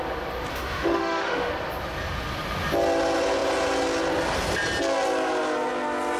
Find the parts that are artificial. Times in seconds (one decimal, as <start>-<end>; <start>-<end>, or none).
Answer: 0.5-1.5